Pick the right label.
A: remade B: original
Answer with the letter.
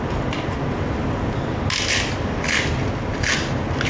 B